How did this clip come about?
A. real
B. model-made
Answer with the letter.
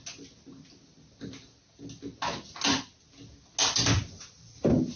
A